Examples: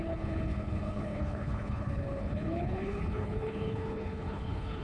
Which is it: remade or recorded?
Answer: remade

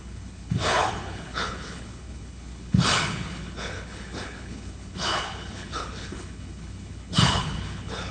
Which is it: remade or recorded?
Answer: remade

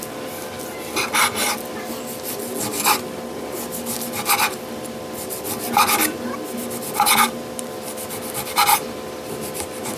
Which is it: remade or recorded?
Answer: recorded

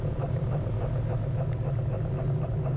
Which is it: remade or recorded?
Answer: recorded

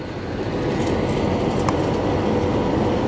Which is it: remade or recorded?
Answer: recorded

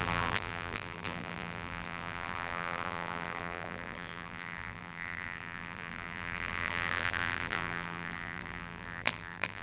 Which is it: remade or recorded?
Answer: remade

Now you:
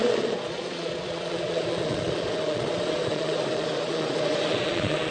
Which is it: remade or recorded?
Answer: remade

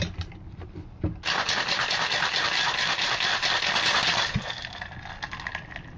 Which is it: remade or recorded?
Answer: recorded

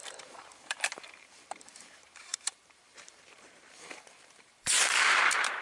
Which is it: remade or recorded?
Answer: remade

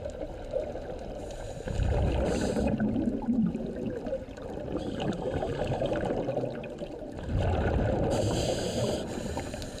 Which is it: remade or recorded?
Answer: recorded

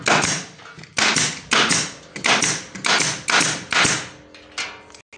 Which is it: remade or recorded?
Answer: recorded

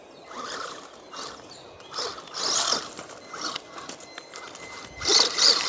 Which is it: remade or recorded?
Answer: recorded